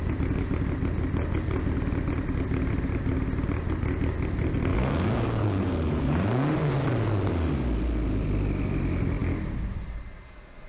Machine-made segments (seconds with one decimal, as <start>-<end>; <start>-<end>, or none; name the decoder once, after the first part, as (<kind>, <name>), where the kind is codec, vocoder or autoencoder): 4.7-6.7 (codec, DAC)